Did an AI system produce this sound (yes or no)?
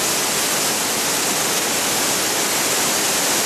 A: no